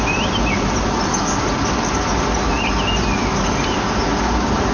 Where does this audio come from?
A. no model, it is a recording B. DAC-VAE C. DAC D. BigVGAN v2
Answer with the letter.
A